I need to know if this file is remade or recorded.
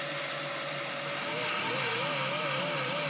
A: recorded